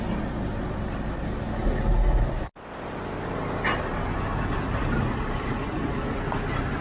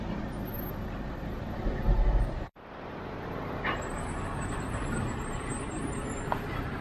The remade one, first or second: second